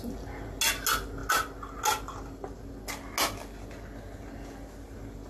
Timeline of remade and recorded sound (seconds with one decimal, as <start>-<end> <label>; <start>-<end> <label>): 0.0-5.3 recorded